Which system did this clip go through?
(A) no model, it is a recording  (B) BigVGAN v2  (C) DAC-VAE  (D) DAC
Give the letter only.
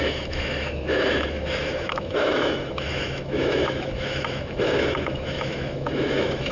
C